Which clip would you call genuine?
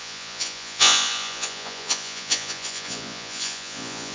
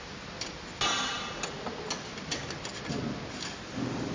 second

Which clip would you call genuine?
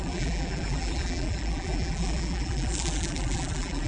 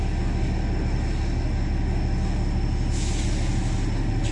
second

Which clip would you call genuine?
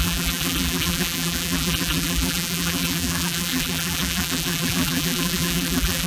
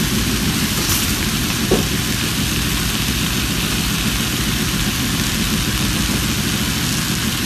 second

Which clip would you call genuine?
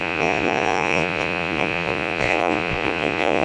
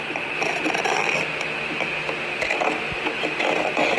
second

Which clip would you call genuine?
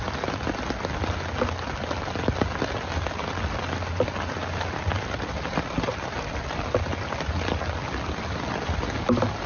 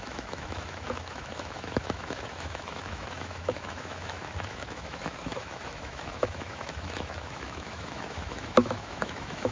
first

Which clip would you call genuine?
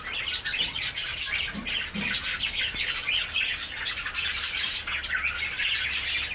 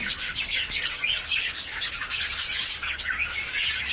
first